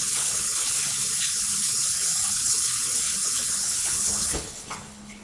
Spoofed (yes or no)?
yes